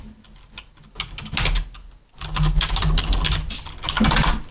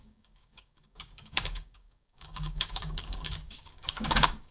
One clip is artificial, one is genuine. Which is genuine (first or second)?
first